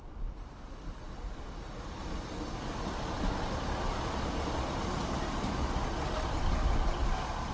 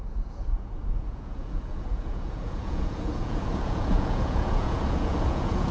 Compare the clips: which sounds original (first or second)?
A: first